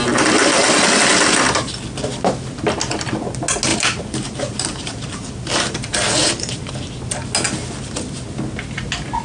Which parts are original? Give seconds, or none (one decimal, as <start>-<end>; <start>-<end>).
0.0-3.7; 6.7-9.2